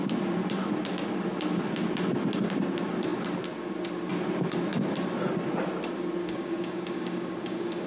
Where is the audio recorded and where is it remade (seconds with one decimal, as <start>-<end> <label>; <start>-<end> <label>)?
0.0-6.2 recorded; 6.2-7.9 remade

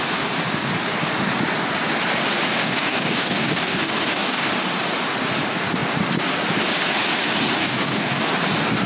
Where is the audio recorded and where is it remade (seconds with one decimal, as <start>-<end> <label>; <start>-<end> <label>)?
0.0-2.6 recorded; 2.6-4.5 remade; 4.5-7.6 recorded; 7.6-8.2 remade; 8.2-8.9 recorded

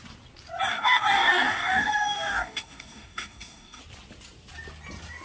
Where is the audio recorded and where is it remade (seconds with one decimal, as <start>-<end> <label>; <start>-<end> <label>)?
0.0-0.7 recorded; 0.7-3.8 remade; 3.8-5.2 recorded

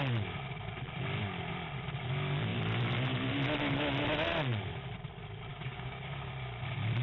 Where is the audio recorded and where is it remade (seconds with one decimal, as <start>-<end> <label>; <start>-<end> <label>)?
0.0-5.5 recorded; 5.5-6.3 remade; 6.3-7.0 recorded